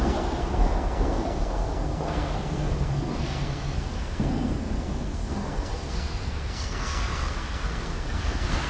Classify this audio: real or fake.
fake